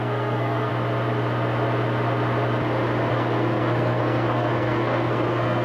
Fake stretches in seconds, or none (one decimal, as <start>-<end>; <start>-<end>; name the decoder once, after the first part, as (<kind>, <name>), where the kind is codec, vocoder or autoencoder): 0.0-0.7 (codec, SNAC); 3.1-5.6

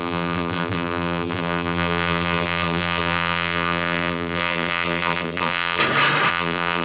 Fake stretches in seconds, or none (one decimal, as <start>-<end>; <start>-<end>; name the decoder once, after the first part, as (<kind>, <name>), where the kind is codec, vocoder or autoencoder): 0.0-5.8 (vocoder, BigVGAN v2); 6.3-6.8

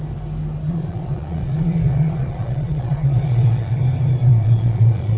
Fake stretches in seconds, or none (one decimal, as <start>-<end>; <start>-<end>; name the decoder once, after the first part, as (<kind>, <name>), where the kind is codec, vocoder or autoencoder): 0.7-3.8 (vocoder, Vocos); 4.3-5.2

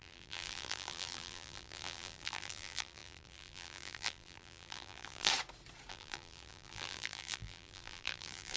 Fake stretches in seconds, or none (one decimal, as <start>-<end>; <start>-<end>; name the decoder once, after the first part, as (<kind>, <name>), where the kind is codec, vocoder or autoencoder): 0.0-5.3 (vocoder, BigVGAN v2); 5.9-8.6